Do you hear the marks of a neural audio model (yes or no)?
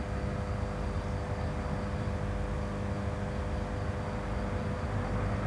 no